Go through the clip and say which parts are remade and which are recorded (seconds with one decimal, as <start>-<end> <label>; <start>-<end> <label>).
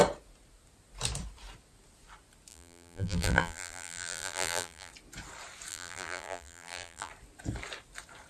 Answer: 0.0-2.5 recorded; 2.5-4.9 remade; 4.9-5.7 recorded; 5.7-7.1 remade; 7.1-8.3 recorded